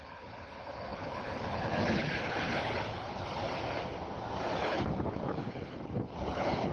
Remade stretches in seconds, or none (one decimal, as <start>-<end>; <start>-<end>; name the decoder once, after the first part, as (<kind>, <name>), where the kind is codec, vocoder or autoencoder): 0.0-3.4 (codec, HILCodec); 4.6-6.7